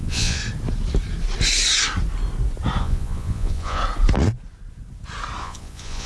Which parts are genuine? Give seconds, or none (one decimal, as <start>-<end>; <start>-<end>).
0.4-2.8; 3.8-5.4